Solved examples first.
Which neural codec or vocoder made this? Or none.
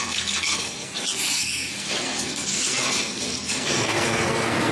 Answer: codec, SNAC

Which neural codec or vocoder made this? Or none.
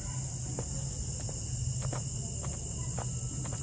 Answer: none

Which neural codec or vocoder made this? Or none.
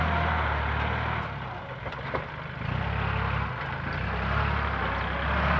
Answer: none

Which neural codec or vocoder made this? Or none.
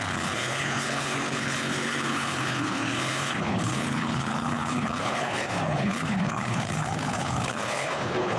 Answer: codec, HILCodec